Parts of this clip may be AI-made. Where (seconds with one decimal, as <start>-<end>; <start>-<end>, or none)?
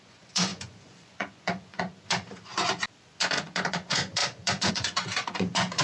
0.0-2.5; 3.0-5.8